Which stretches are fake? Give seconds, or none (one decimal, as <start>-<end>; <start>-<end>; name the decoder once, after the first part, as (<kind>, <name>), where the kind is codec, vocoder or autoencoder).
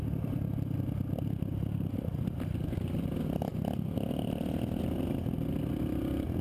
none